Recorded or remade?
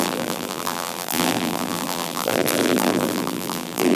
remade